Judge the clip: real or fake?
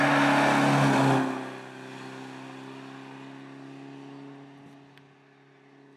real